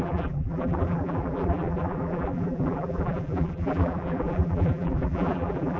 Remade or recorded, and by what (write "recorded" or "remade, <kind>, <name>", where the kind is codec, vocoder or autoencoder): remade, vocoder, BigVGAN v2